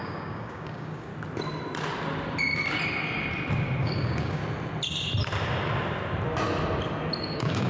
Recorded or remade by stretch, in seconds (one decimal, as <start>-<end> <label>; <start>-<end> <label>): 0.0-1.1 remade; 1.1-3.8 recorded; 3.8-4.4 remade; 4.4-7.2 recorded; 7.2-7.7 remade